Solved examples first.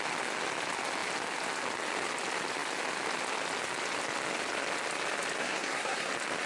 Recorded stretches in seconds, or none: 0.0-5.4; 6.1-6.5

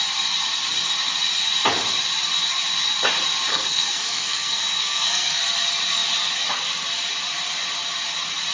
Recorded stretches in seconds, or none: 0.0-3.5; 5.4-8.5

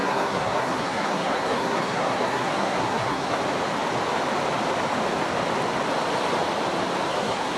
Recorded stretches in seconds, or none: 3.4-7.1

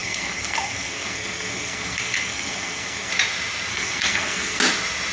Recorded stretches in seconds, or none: 3.1-3.7; 4.6-5.1

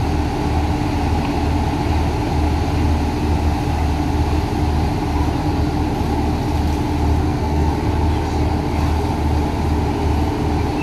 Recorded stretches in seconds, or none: 0.0-7.2; 7.7-10.8